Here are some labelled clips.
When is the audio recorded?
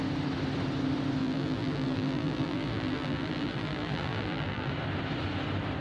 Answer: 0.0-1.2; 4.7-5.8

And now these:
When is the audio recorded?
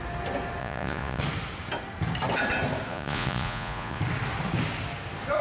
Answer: 0.0-0.6; 1.2-2.9; 4.0-5.4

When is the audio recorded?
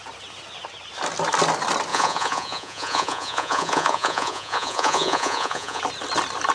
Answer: 0.0-1.9; 5.8-6.5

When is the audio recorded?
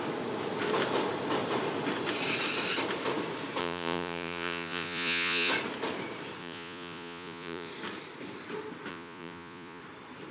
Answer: 0.0-3.6; 5.5-6.4; 7.7-8.9; 9.8-10.3